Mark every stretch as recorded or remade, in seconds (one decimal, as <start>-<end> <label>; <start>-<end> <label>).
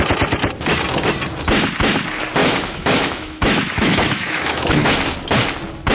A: 0.0-2.4 recorded; 2.4-4.9 remade; 4.9-5.9 recorded